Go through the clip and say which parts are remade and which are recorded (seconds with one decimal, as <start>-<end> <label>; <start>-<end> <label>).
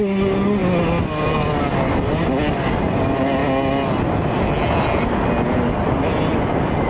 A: 0.0-6.9 recorded